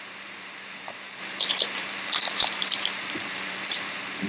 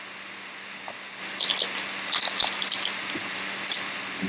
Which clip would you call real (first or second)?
second